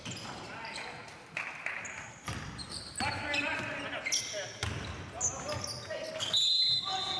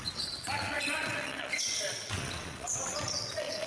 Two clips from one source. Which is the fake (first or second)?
second